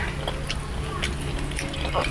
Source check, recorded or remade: recorded